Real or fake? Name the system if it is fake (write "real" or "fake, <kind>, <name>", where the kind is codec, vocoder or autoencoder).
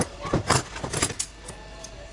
real